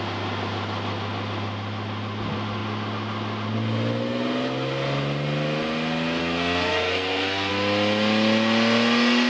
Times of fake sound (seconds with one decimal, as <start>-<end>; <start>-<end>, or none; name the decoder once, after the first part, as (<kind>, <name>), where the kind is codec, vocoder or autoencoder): 6.2-7.5 (codec, SNAC)